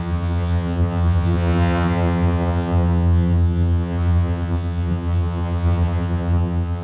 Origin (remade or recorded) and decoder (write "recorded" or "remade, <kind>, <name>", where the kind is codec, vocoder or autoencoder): remade, vocoder, HiFi-GAN